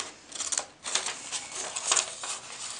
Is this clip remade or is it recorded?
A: recorded